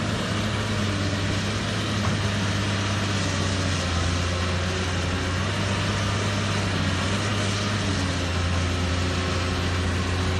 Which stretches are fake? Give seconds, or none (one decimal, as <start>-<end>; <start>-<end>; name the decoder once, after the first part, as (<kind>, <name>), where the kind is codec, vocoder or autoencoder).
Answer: none